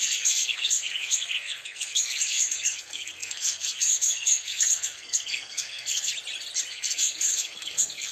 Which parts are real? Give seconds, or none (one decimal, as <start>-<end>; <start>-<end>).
6.1-6.7